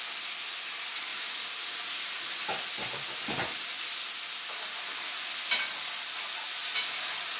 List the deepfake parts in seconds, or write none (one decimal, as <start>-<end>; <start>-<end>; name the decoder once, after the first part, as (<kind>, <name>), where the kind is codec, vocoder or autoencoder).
none